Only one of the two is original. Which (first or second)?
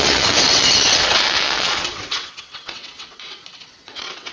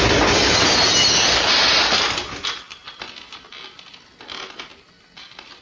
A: second